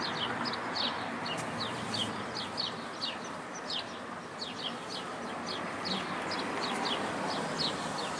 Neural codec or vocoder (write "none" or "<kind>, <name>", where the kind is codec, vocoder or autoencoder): none